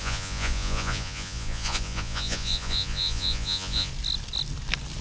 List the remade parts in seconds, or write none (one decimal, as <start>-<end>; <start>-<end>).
0.0-3.9